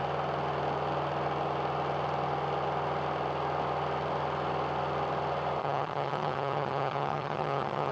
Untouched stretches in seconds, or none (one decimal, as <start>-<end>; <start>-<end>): 0.0-5.6